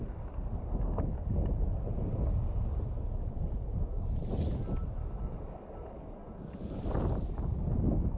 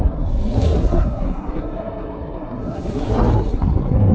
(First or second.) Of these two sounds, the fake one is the second